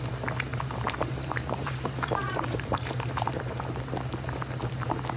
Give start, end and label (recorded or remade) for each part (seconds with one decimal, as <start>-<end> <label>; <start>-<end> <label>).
0.0-0.5 recorded; 0.5-3.6 remade; 3.6-5.2 recorded